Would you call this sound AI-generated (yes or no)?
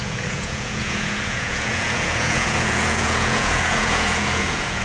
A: yes